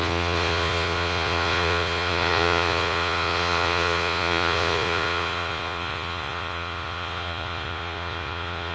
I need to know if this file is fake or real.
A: fake